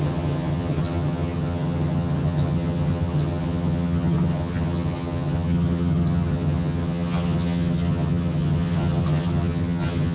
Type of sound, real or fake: fake